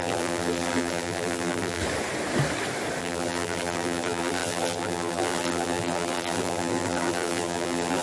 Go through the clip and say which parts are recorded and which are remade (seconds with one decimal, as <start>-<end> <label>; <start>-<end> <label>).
0.0-1.8 remade; 1.8-3.0 recorded; 3.0-8.0 remade